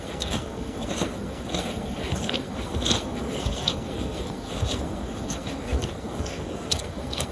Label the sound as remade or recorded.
remade